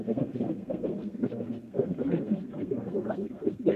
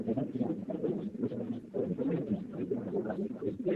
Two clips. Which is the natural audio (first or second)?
second